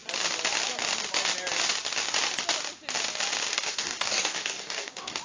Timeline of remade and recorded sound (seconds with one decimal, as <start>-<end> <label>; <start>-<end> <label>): 0.0-3.5 recorded; 3.5-5.2 remade